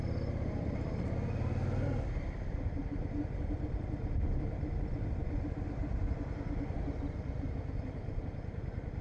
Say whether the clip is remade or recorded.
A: recorded